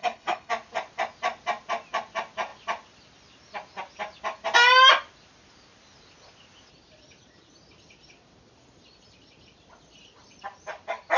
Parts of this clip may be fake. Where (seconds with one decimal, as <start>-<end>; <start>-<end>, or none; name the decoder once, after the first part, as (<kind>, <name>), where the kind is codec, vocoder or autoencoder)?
0.0-0.5 (codec, HILCodec)

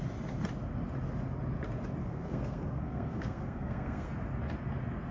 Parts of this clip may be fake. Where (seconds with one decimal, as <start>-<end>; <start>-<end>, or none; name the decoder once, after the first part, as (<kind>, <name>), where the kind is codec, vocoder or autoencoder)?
2.0-4.1 (codec, SNAC)

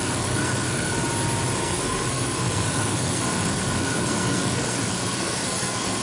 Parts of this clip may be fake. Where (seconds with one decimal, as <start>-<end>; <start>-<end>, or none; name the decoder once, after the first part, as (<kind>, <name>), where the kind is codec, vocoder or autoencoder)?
0.0-1.0 (codec, SNAC); 1.6-6.0

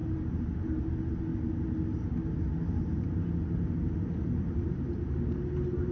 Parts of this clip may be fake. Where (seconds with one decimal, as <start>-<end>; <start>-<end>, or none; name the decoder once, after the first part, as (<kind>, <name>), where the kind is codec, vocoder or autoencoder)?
0.0-0.8 (vocoder, BigVGAN v2)

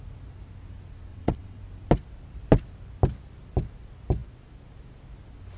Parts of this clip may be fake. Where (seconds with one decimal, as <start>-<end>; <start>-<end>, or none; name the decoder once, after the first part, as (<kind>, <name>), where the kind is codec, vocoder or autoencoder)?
1.1-1.6 (vocoder, WaveNeXt)

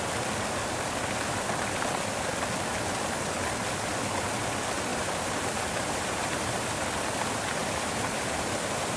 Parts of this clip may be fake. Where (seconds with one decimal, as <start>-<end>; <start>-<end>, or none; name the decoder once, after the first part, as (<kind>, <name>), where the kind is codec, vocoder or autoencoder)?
4.9-6.5 (vocoder, BigVGAN v2); 7.6-8.2

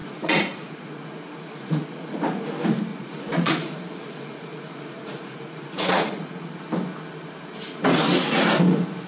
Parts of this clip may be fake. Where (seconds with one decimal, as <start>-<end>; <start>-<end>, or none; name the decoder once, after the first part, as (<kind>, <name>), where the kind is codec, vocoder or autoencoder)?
0.0-2.4 (vocoder, Vocos); 2.9-6.5

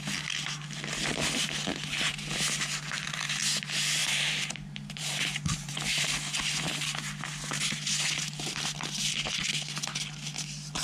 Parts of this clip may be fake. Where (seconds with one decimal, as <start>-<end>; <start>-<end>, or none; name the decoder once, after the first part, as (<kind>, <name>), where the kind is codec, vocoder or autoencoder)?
4.0-5.7 (vocoder, BigVGAN v2)